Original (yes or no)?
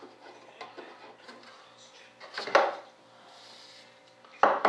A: yes